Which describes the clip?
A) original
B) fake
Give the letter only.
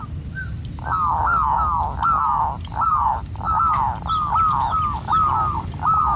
A